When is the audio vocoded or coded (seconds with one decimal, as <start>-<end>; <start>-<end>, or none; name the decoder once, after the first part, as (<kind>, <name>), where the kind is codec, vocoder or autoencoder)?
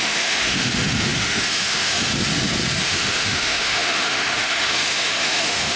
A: 0.0-2.1 (autoencoder, DAC-VAE); 2.8-5.8